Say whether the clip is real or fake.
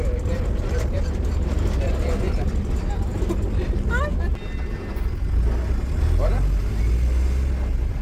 real